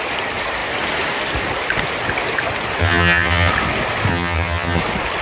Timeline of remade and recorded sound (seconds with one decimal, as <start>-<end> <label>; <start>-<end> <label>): 0.0-2.8 recorded; 2.8-3.5 remade; 3.5-4.1 recorded; 4.1-4.8 remade; 4.8-5.2 recorded